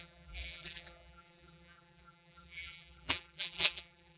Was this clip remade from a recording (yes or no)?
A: yes